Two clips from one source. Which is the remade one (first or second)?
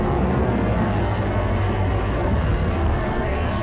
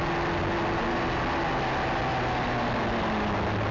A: first